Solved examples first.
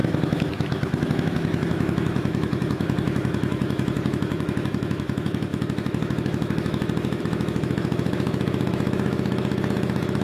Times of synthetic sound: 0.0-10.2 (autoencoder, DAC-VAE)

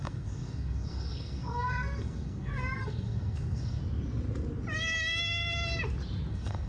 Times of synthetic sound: 0.0-3.8 (codec, SNAC); 6.3-6.7

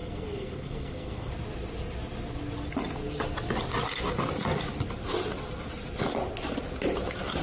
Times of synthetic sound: 0.0-1.3 (codec, SNAC)

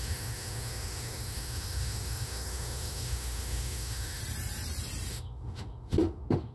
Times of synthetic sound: 0.0-4.2 (autoencoder, DAC-VAE); 5.1-6.5

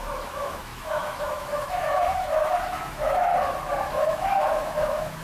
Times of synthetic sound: 0.0-3.3 (autoencoder, DAC-VAE); 3.9-5.2

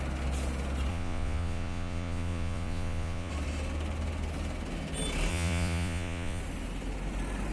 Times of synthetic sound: 0.9-3.3 (vocoder, Vocos); 5.3-6.4

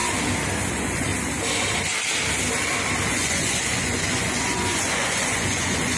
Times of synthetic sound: 0.7-1.1 (vocoder, Vocos); 3.1-6.0